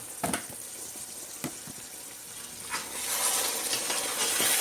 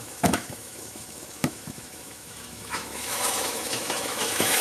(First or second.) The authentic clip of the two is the first